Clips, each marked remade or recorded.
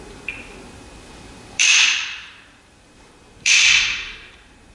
remade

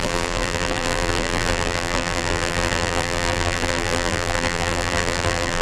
remade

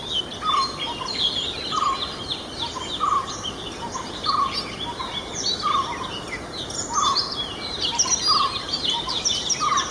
recorded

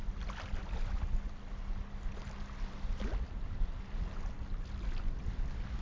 recorded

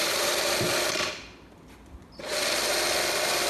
recorded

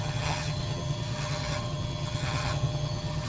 remade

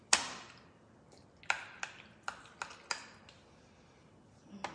recorded